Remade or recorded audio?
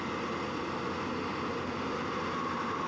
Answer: recorded